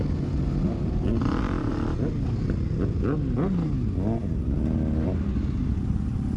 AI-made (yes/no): no